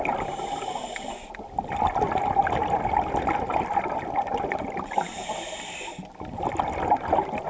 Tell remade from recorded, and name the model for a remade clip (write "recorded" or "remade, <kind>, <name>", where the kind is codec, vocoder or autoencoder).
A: recorded